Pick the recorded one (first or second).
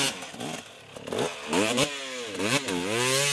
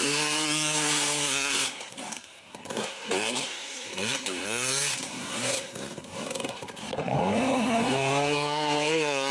first